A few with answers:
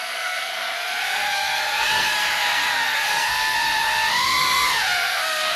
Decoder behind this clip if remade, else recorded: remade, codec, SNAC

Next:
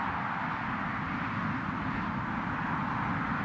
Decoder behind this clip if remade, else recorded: recorded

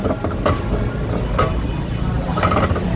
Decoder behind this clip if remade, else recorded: recorded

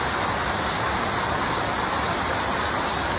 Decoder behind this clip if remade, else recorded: recorded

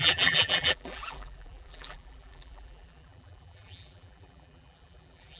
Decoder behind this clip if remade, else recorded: remade, vocoder, BigVGAN v2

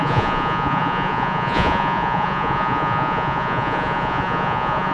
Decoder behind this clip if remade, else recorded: remade, vocoder, Vocos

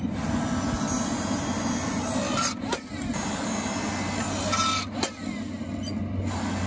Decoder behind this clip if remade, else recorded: recorded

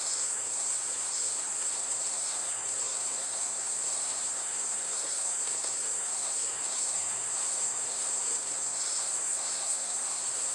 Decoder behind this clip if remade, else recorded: remade, codec, SNAC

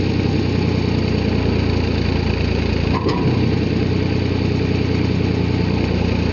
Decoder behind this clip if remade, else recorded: recorded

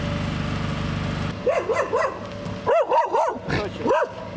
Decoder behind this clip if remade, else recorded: recorded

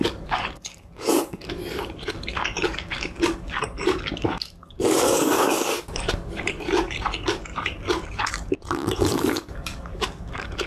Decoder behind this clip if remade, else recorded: remade, codec, DAC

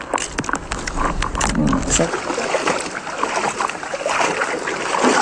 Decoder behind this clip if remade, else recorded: recorded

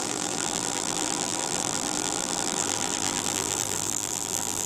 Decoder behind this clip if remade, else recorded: remade, vocoder, BigVGAN v2